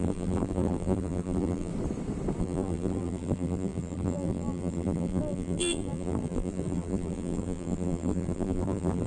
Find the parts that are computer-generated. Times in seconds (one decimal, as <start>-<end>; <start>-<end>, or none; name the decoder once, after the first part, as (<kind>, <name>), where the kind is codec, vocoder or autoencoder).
0.0-1.7 (vocoder, BigVGAN v2); 2.4-9.1